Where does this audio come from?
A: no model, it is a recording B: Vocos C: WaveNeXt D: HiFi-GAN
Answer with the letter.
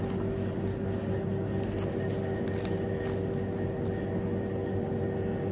A